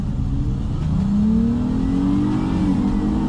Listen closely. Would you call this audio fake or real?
real